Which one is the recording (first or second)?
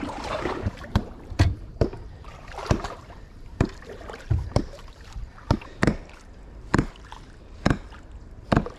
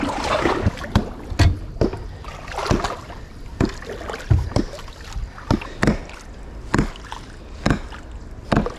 second